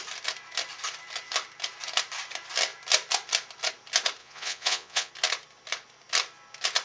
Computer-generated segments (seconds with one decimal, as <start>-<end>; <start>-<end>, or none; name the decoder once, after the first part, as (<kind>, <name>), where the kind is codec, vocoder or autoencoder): 4.2-5.1 (vocoder, Vocos)